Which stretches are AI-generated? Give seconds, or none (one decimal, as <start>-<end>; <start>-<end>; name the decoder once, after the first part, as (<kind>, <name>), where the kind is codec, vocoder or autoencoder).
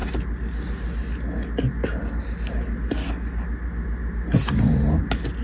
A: none